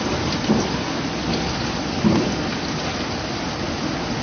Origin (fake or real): real